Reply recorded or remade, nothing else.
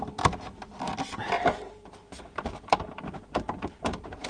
recorded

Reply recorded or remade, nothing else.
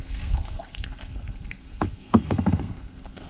remade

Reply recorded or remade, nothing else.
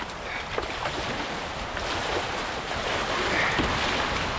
recorded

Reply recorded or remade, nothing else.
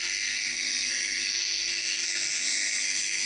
remade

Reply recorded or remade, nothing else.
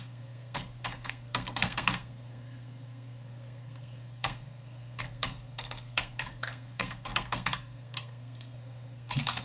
remade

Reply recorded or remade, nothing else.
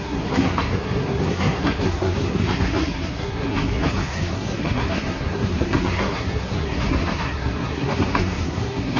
remade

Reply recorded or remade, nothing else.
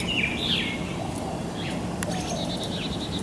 recorded